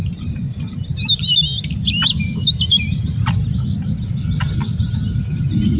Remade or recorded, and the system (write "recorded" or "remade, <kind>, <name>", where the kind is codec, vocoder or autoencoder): recorded